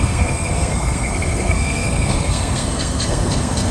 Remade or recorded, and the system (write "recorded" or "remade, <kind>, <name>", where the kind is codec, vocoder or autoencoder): remade, codec, SNAC